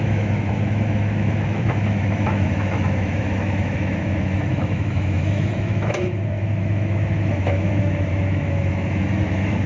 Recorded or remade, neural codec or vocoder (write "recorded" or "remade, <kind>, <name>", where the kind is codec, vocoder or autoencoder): remade, autoencoder, DAC-VAE